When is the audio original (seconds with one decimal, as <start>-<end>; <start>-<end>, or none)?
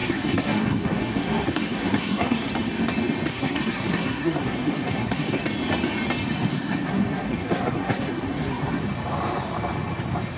2.5-3.3; 5.4-6.5; 8.8-10.4